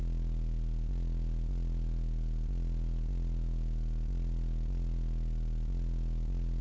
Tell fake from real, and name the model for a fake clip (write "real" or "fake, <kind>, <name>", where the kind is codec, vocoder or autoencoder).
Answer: real